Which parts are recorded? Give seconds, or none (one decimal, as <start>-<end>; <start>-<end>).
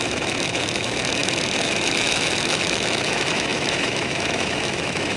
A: none